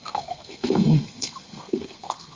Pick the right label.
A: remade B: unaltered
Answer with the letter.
A